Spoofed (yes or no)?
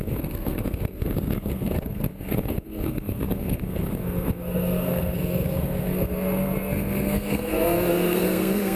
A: yes